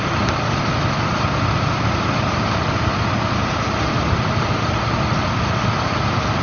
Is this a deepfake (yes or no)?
no